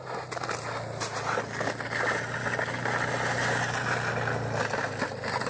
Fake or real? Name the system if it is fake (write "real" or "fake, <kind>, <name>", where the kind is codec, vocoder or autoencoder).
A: real